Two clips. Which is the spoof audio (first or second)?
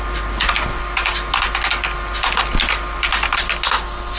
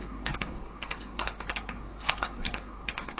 second